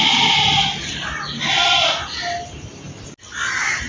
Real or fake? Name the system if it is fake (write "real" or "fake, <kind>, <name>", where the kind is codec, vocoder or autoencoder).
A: real